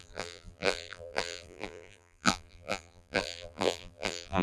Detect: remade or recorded remade